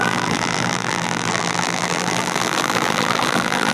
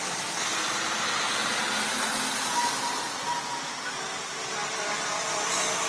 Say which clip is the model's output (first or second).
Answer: first